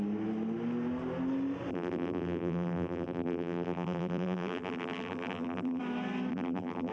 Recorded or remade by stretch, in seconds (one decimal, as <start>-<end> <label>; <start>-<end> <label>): 0.0-1.7 recorded; 1.7-5.8 remade; 5.8-6.3 recorded; 6.3-6.9 remade

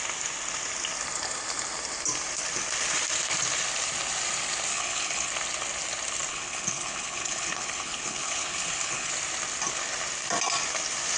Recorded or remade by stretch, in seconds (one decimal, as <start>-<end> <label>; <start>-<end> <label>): 0.0-4.7 recorded; 4.7-5.3 remade; 5.3-6.3 recorded; 6.3-9.1 remade; 9.1-11.2 recorded